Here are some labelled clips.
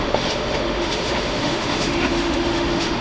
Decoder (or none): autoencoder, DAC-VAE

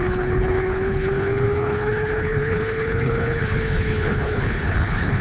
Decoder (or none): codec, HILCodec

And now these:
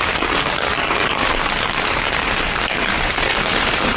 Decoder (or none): vocoder, BigVGAN v2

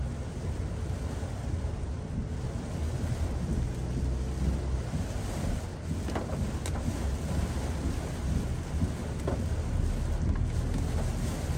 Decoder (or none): none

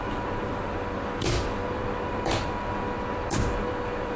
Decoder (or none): vocoder, BigVGAN v2